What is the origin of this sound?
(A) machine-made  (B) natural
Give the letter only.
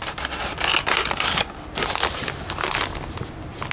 B